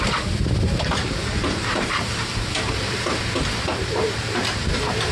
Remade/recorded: remade